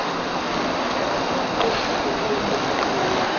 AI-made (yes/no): no